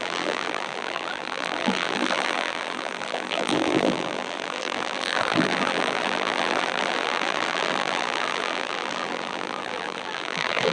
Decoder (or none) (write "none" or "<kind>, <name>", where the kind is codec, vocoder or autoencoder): vocoder, BigVGAN v2